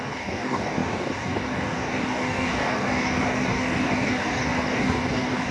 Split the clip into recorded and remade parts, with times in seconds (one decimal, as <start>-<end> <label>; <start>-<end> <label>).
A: 0.0-5.5 remade